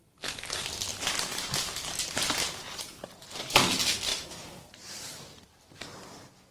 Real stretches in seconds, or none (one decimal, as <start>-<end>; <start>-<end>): 0.0-0.9; 3.3-4.1; 5.3-6.5